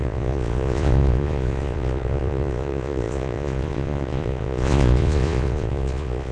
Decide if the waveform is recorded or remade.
remade